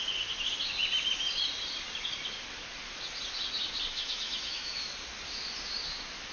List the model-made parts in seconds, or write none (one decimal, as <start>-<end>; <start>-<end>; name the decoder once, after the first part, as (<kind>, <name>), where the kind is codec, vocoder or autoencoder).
3.9-4.9 (autoencoder, DAC-VAE)